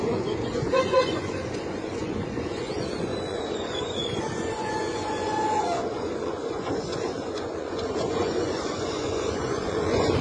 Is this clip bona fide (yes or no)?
no